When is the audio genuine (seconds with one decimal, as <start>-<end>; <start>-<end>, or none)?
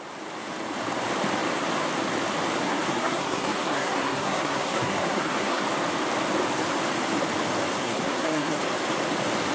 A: 0.0-2.6; 5.6-7.8; 8.6-9.5